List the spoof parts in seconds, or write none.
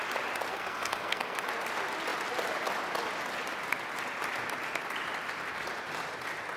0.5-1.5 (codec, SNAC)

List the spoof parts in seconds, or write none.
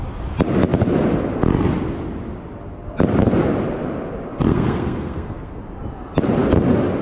4.3-5.6 (codec, SNAC)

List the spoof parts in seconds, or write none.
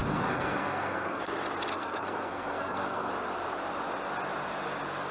0.0-1.2 (codec, SNAC); 1.7-3.1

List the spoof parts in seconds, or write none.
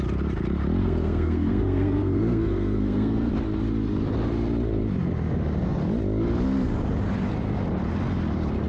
0.8-3.3 (codec, SNAC)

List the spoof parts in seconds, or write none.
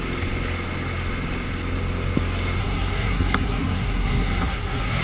2.6-5.0 (codec, SNAC)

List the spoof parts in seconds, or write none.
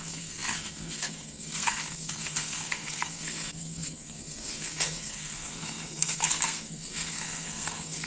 0.0-8.1 (codec, SNAC)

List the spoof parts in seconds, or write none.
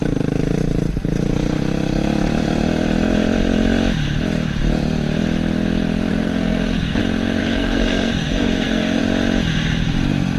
6.1-7.0 (codec, SNAC); 7.4-9.0